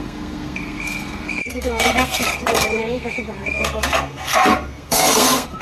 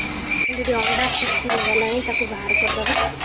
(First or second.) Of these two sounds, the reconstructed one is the first